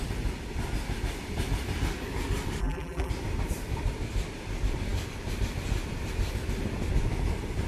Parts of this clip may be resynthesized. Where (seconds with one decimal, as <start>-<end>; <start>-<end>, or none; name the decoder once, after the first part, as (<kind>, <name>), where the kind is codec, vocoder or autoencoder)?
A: 2.6-3.1 (vocoder, BigVGAN v2)